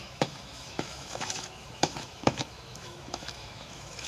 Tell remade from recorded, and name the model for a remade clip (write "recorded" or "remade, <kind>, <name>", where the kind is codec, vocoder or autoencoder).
remade, autoencoder, DAC-VAE